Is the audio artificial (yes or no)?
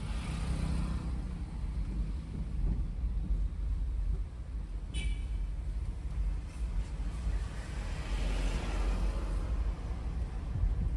no